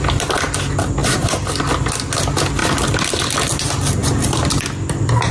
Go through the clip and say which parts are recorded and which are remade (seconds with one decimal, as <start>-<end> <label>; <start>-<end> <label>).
0.0-1.0 recorded; 1.0-1.5 remade; 1.5-2.6 recorded; 2.6-3.1 remade; 3.1-5.3 recorded